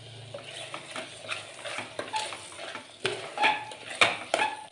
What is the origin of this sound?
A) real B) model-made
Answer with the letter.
A